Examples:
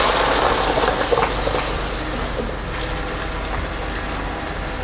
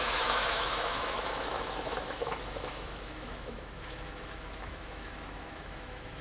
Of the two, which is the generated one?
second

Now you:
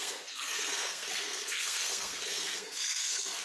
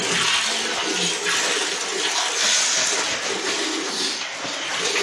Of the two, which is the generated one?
first